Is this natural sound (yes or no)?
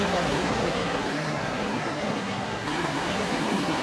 no